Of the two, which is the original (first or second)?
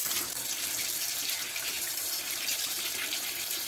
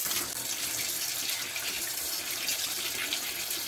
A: second